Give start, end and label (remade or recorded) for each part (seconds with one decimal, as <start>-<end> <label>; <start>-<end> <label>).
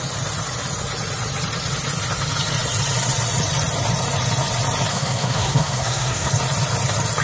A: 0.0-4.9 recorded; 4.9-6.3 remade; 6.3-7.2 recorded